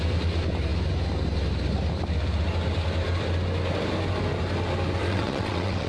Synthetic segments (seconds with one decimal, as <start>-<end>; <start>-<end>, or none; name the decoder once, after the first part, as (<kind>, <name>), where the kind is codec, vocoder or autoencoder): 5.0-5.9 (vocoder, WaveNeXt)